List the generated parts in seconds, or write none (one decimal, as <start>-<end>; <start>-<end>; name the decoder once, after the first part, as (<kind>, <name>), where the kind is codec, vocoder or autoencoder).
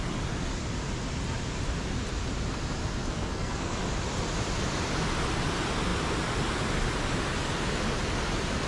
3.0-3.8 (codec, SNAC)